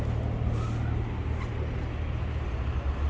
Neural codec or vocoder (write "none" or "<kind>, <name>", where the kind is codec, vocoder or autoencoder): none